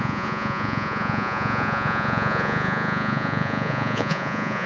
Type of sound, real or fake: fake